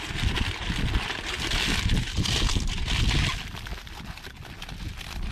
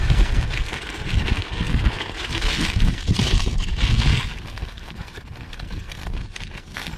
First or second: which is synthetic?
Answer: second